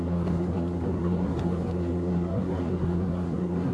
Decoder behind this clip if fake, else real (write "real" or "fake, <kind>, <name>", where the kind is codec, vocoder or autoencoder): fake, codec, SNAC